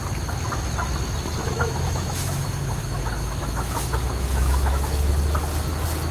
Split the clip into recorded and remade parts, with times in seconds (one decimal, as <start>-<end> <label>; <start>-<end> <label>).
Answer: 0.0-1.4 recorded; 1.4-5.1 remade; 5.1-6.1 recorded

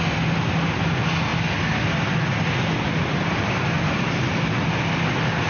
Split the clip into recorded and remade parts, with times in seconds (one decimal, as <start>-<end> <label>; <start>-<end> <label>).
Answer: 0.0-5.5 recorded